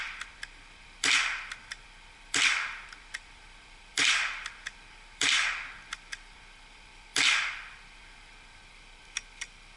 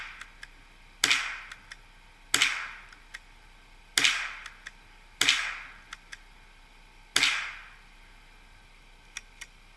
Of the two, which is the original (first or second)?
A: second